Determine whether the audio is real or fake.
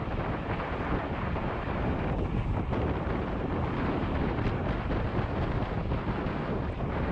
real